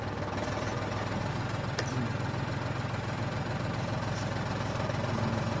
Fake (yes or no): no